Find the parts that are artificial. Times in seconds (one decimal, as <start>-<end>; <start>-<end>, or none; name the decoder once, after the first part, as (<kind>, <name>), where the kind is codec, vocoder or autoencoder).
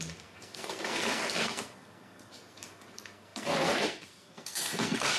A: 0.0-5.2 (codec, SNAC)